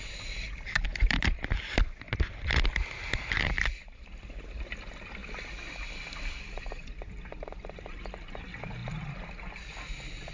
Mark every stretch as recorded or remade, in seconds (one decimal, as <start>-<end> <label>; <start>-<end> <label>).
0.0-10.3 recorded